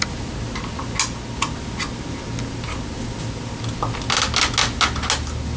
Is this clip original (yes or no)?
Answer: yes